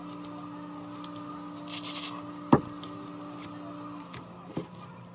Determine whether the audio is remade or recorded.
recorded